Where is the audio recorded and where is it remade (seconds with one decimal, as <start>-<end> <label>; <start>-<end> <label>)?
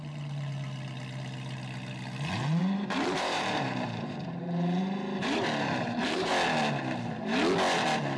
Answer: 0.0-2.6 recorded; 2.6-6.3 remade; 6.3-8.2 recorded